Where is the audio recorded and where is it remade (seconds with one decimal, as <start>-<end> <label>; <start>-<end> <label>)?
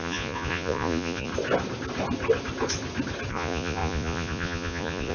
0.0-1.3 remade; 1.3-3.3 recorded; 3.3-5.1 remade